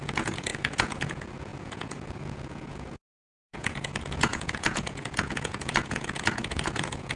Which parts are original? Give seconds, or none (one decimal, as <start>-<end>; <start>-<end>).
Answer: none